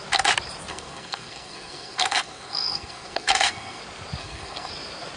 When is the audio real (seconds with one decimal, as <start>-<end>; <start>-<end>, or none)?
0.0-0.7; 3.8-4.2; 4.7-5.2